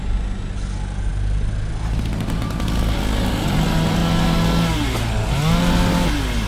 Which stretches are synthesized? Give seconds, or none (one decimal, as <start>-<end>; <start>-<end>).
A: none